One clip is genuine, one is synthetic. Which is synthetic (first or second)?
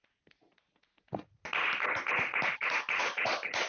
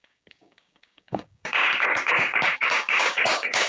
second